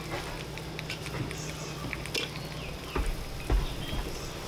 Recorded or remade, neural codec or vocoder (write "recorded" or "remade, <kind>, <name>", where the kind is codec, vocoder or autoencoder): recorded